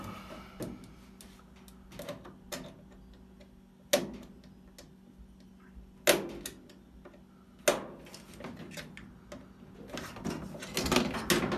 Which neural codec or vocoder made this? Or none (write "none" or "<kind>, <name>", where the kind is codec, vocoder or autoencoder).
none